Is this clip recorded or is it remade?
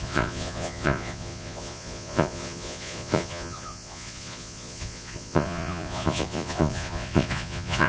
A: remade